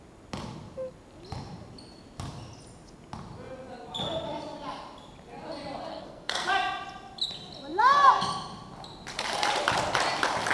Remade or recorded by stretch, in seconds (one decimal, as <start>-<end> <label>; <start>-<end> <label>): 0.0-5.9 recorded; 5.9-6.5 remade; 6.5-10.5 recorded